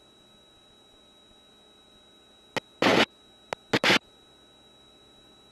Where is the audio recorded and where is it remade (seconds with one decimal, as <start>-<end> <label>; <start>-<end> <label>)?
0.0-5.5 recorded